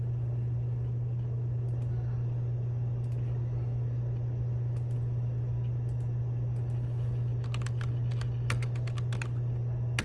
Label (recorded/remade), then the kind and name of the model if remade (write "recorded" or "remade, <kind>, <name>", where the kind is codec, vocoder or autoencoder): recorded